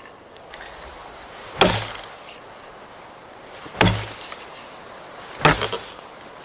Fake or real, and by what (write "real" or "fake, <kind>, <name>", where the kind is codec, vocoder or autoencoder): real